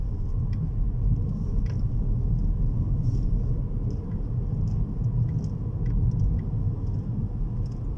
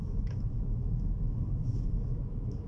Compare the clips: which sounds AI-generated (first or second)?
second